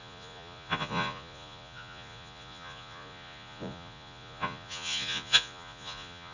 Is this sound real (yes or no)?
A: no